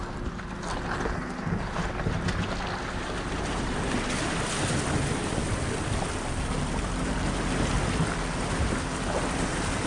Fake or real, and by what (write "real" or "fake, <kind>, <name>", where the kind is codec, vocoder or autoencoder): real